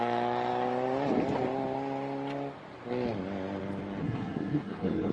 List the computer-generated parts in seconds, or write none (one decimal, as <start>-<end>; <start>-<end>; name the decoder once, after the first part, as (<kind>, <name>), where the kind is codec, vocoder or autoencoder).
4.0-5.1 (codec, SNAC)